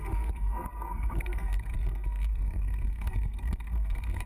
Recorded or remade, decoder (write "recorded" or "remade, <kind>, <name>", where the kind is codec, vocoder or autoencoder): remade, codec, SNAC